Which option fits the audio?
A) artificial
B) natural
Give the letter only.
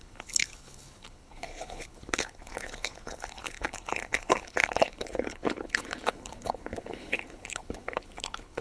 A